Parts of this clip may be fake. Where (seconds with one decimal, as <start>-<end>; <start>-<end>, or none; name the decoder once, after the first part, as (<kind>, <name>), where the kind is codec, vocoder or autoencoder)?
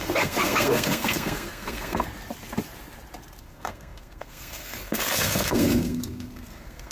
0.0-2.1 (codec, SNAC); 3.4-6.9